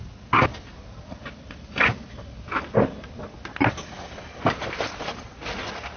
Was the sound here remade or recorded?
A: recorded